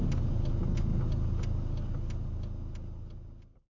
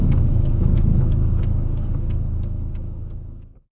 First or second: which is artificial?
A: second